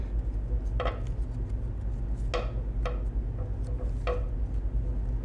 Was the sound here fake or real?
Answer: real